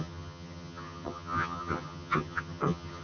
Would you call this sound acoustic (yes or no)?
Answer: no